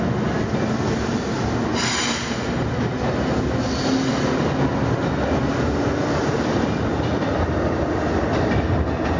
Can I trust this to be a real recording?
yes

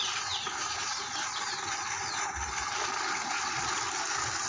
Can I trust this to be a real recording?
yes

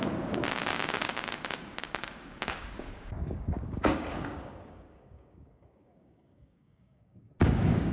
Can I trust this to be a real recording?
no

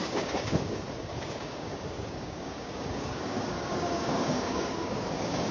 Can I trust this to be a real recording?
no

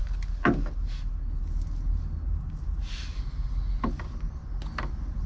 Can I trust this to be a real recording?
yes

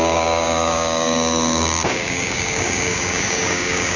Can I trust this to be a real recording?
no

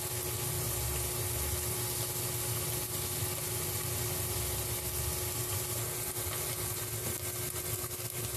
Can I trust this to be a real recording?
yes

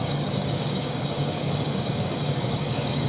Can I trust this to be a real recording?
no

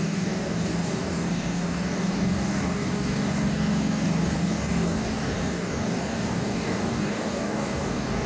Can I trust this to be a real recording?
no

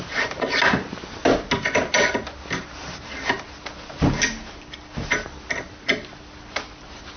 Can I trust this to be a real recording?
yes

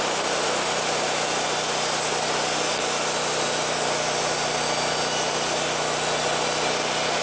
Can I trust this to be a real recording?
yes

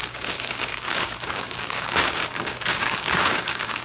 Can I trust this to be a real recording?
no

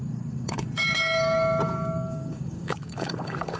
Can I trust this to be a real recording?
no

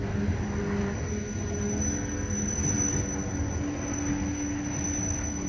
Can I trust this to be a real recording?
yes